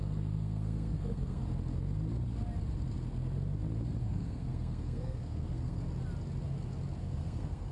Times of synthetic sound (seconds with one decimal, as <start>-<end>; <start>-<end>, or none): 0.0-1.4; 4.0-5.8; 7.0-7.7